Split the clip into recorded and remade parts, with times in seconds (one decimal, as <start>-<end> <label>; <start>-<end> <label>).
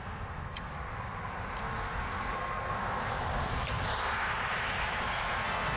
0.0-0.7 remade; 0.7-1.6 recorded; 1.6-3.0 remade; 3.0-4.0 recorded; 4.0-4.4 remade; 4.4-5.0 recorded; 5.0-5.8 remade